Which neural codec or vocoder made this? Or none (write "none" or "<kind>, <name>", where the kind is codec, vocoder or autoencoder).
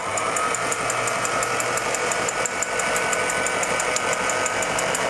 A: none